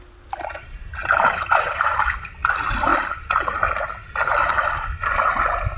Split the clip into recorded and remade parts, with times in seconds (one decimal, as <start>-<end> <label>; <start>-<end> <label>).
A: 0.0-1.0 recorded; 1.0-2.0 remade; 2.0-5.8 recorded